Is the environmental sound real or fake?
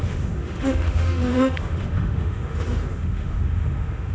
fake